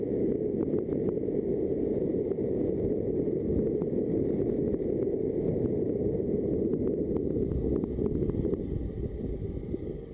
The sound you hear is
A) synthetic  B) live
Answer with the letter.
B